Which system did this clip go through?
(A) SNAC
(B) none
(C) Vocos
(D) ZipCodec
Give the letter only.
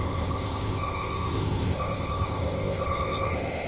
D